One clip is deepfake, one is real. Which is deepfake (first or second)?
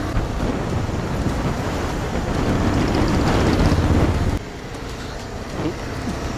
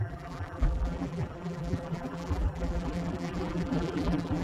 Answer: second